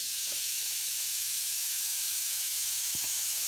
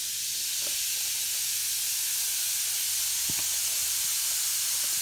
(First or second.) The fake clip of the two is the first